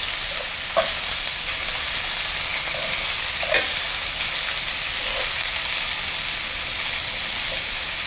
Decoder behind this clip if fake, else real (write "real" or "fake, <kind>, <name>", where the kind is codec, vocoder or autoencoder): real